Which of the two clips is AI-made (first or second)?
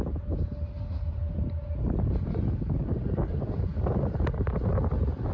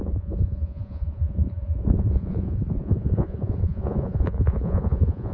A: second